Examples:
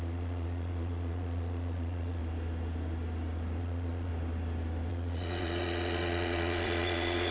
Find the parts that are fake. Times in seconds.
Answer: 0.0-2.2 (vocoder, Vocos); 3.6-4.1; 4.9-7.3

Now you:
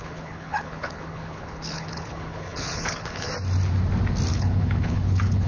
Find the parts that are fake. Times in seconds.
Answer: 0.0-3.3 (codec, HILCodec); 4.3-5.5